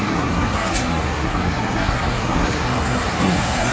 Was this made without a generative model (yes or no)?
no